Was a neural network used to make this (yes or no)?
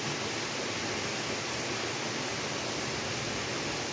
no